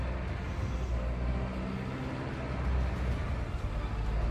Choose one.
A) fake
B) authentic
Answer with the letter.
B